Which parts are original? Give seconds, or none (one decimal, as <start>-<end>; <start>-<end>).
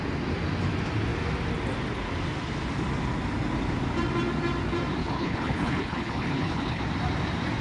0.0-5.0; 6.8-7.6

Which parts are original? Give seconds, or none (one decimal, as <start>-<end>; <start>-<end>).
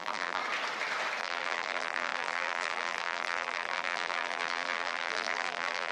0.4-1.2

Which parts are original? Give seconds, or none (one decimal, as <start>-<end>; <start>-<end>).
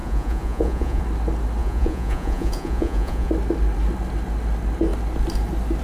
1.0-1.6; 3.3-5.8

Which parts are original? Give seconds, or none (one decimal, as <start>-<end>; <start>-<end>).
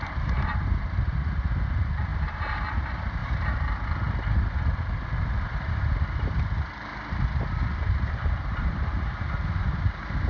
3.2-5.2; 6.9-7.6